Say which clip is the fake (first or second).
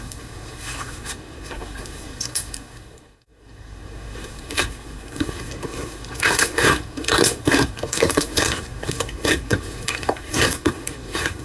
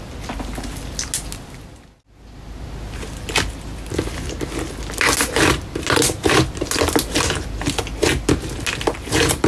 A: first